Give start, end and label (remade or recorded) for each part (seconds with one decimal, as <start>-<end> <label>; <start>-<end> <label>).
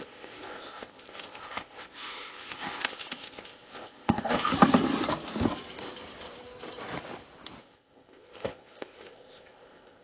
0.0-4.5 remade; 4.5-7.6 recorded; 7.6-10.0 remade